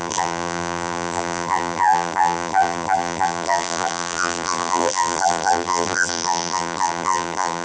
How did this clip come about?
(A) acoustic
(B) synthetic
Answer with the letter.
B